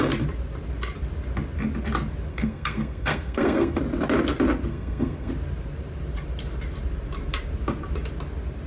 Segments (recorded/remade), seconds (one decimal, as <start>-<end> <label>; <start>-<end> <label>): 0.0-2.3 recorded; 2.3-3.8 remade; 3.8-4.7 recorded; 4.7-5.3 remade; 5.3-8.7 recorded